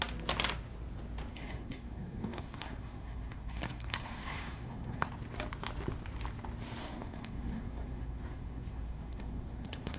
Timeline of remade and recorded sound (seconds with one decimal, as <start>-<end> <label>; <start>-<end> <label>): 0.0-1.3 recorded; 1.3-5.1 remade; 5.1-6.8 recorded; 6.8-10.0 remade